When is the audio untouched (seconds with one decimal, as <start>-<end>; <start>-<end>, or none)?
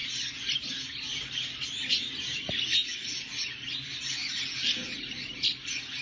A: 0.0-6.0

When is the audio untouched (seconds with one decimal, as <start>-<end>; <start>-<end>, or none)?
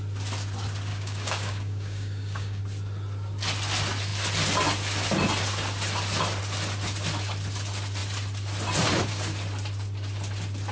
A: 0.0-0.9; 2.6-10.7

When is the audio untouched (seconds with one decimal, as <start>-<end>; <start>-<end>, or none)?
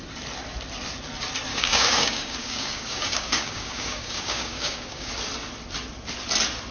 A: 0.0-1.5; 5.1-6.7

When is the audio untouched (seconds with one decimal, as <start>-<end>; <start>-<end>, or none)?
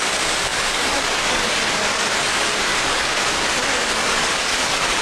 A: none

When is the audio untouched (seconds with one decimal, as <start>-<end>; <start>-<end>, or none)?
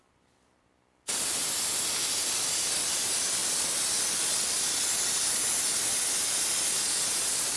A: 0.0-7.6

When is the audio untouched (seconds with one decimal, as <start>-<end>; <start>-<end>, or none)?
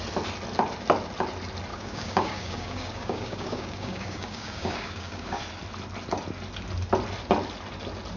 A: 0.0-1.7; 5.4-8.2